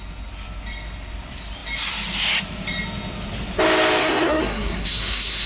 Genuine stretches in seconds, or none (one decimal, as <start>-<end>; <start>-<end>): 0.0-4.0